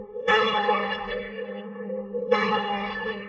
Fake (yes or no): yes